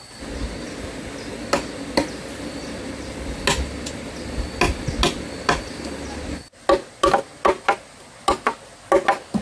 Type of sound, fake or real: real